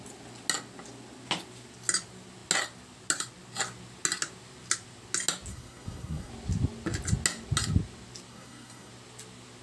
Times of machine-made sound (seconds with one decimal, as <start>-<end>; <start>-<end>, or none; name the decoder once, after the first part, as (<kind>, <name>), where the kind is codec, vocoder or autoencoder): 5.5-6.3 (codec, SNAC); 8.3-8.9